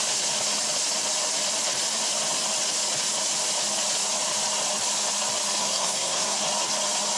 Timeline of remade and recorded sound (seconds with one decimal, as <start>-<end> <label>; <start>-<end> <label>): 0.0-5.6 recorded; 5.6-6.4 remade; 6.4-7.2 recorded